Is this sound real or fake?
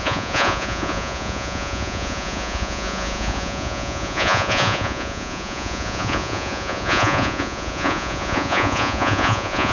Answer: fake